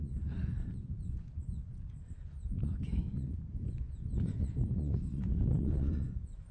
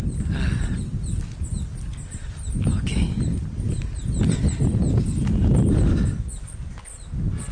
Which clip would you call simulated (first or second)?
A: first